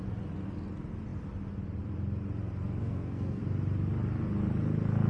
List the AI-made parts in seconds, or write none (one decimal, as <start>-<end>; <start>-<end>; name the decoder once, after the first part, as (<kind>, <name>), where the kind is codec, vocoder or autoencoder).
2.8-3.4 (codec, SNAC)